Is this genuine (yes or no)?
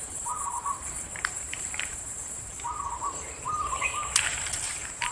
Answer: no